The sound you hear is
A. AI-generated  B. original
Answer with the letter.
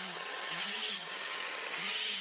A